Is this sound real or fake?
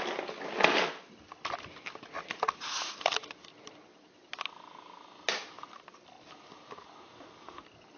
real